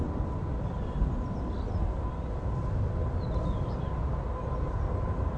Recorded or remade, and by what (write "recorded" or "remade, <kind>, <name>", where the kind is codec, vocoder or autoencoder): recorded